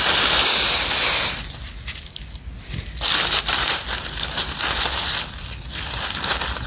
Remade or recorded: recorded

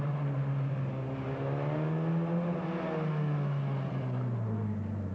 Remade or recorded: recorded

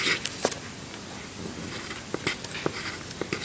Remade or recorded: recorded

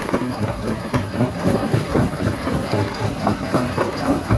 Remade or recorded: remade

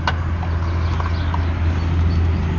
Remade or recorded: recorded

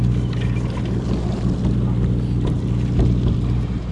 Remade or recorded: recorded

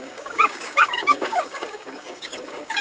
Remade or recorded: remade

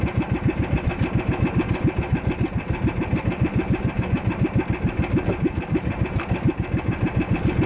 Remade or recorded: recorded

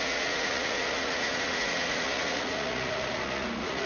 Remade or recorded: remade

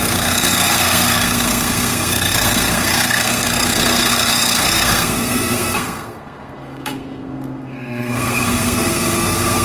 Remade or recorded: remade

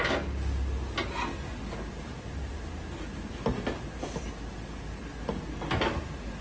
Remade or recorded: recorded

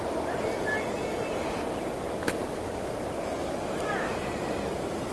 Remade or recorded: recorded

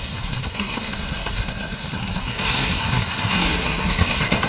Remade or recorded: remade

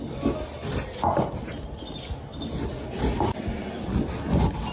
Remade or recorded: recorded